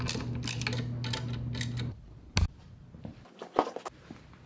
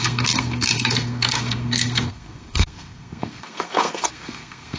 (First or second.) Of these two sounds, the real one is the first